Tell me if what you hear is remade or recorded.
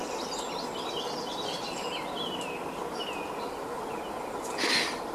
recorded